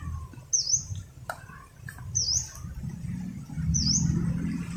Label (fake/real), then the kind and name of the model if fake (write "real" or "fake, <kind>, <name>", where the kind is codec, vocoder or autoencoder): real